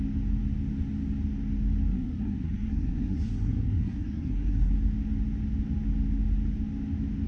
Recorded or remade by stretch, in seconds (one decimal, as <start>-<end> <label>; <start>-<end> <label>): 0.0-1.9 recorded; 1.9-4.7 remade; 4.7-7.3 recorded